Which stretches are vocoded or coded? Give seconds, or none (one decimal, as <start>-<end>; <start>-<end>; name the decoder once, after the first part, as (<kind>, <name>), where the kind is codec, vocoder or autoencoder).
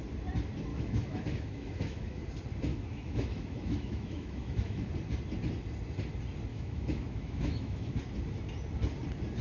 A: 0.7-2.3 (autoencoder, DAC-VAE); 2.7-4.9; 6.5-8.0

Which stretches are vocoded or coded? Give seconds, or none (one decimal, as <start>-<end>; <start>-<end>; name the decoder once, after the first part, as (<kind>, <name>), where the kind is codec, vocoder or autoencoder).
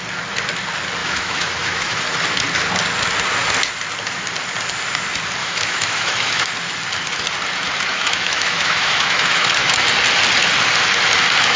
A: 1.0-2.0 (autoencoder, DAC-VAE); 5.4-6.5; 7.9-9.8